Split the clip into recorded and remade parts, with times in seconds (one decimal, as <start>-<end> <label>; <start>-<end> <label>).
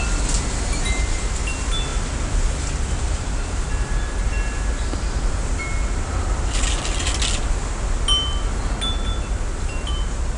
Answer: 0.0-10.4 recorded